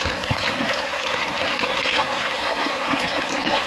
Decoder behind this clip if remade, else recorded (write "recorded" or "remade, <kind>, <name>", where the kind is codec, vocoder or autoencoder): remade, codec, SNAC